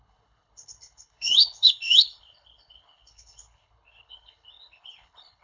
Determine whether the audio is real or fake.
fake